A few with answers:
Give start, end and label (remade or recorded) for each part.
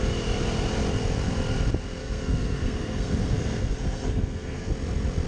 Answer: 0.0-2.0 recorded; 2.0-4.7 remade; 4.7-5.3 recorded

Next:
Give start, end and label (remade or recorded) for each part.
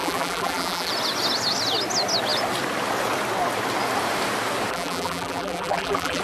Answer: 0.0-0.9 remade; 0.9-4.7 recorded; 4.7-6.2 remade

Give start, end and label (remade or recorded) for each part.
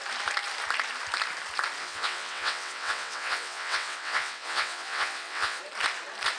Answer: 0.0-1.8 recorded; 1.8-5.6 remade; 5.6-6.4 recorded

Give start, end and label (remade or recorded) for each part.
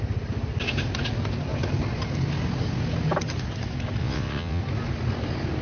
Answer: 0.0-4.0 recorded; 4.0-4.6 remade; 4.6-5.6 recorded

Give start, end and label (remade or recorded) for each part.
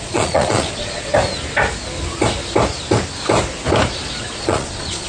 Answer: 0.0-1.1 remade; 1.1-4.2 recorded; 4.2-5.1 remade